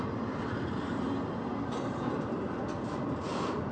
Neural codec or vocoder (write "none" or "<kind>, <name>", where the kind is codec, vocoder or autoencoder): none